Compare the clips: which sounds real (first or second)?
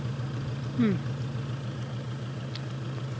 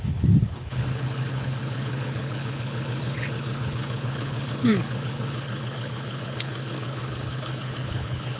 first